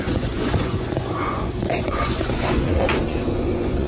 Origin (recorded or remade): remade